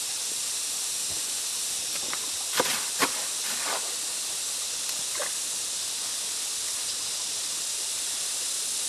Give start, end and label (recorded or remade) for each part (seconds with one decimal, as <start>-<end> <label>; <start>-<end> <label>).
0.0-8.9 recorded